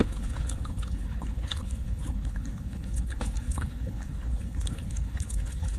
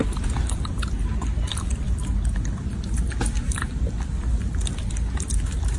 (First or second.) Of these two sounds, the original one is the second